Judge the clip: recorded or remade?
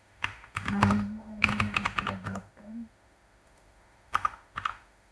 remade